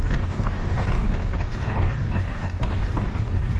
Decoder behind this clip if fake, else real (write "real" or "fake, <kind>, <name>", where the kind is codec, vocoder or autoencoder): fake, codec, DAC